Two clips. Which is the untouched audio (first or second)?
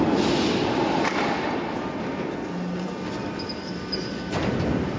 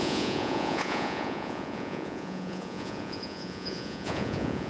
first